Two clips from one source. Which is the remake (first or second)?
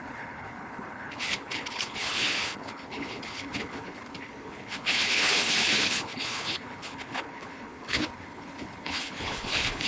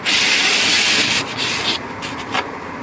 first